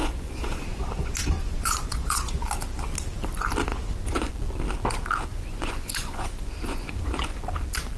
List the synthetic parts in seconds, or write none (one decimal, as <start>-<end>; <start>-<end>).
0.0-2.3; 3.7-4.3; 5.3-7.4

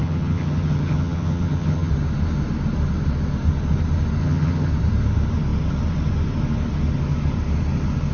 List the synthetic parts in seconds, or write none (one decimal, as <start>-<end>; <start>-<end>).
0.0-1.9; 4.2-4.7